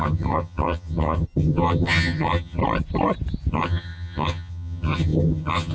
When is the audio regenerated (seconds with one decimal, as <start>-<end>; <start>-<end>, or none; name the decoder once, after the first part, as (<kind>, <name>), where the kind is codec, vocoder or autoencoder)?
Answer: 0.0-2.6 (vocoder, HiFi-GAN); 3.5-5.7